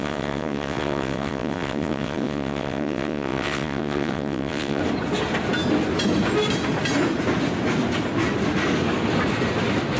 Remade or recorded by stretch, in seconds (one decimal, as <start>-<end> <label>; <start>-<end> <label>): 0.0-4.8 remade; 4.8-10.0 recorded